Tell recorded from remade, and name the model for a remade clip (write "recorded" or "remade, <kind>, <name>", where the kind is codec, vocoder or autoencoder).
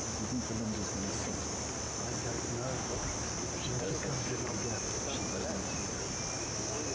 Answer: recorded